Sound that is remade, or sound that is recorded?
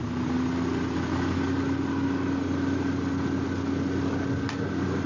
recorded